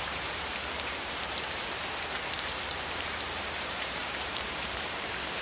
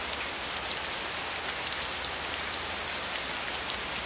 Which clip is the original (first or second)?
second